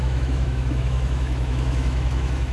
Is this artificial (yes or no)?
yes